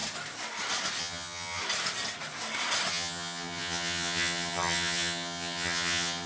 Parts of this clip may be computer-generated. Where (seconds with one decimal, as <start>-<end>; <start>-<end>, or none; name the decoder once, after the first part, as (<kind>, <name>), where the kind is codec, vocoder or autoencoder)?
1.0-1.6 (vocoder, HiFi-GAN); 2.9-6.3